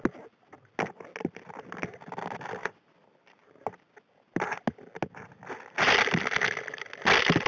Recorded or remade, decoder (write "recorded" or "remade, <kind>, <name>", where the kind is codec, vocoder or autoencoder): recorded